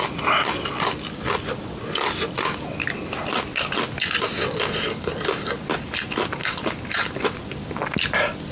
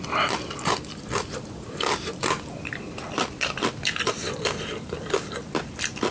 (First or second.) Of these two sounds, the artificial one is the second